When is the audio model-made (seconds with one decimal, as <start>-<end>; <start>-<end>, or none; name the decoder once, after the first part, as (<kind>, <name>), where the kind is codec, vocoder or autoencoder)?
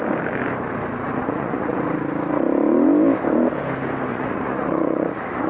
1.2-1.8 (vocoder, Vocos); 4.1-5.5